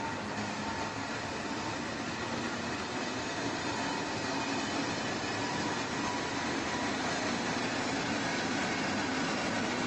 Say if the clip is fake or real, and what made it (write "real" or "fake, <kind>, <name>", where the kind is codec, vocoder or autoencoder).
real